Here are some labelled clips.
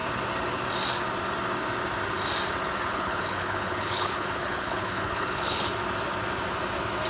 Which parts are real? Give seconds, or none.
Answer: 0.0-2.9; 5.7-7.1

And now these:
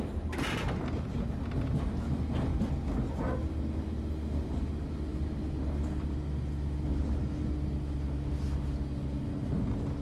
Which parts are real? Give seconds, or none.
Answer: 0.0-10.0

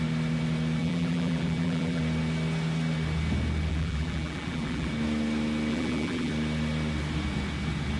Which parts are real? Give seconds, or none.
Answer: 0.0-0.8; 2.0-3.7; 4.9-5.7; 6.3-8.0

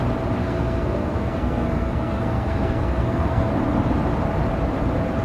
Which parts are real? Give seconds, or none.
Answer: 0.0-0.4; 3.5-5.2

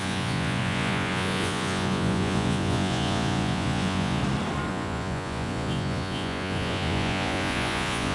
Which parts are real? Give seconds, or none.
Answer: 4.2-4.7